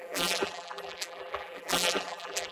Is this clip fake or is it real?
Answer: fake